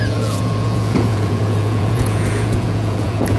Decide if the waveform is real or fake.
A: fake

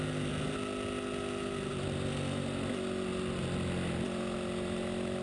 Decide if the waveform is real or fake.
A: real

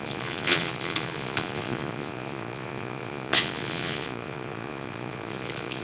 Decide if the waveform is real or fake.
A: fake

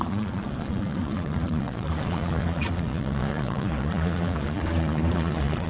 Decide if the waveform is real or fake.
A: fake